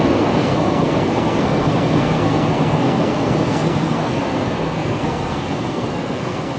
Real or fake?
fake